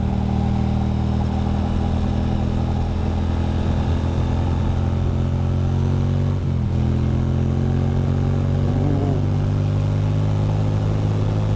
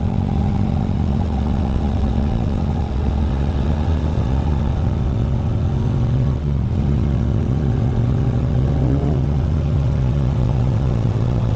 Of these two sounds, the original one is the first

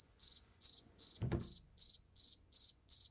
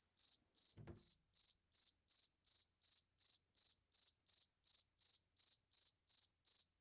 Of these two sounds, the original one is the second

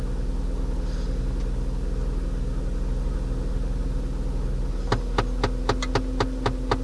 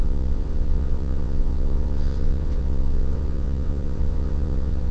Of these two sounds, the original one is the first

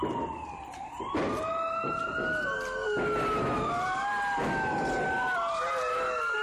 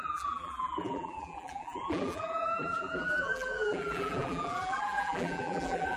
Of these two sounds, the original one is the first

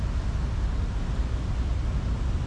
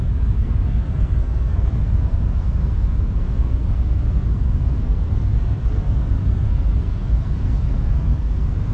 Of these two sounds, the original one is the first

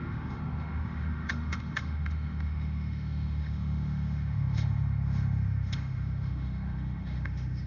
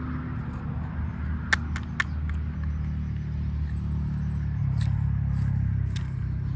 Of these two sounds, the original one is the second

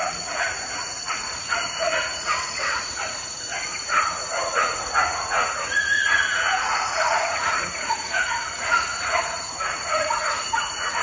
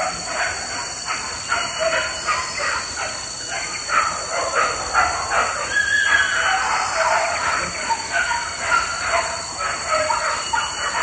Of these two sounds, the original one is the second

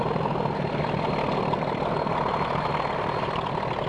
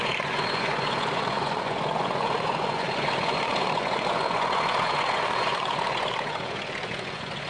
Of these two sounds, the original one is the first